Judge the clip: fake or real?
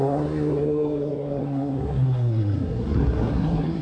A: fake